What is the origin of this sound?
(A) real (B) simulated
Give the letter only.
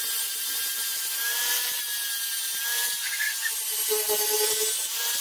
A